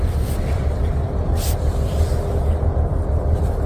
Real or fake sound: fake